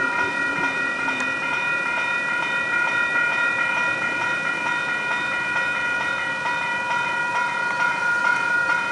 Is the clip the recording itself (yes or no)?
no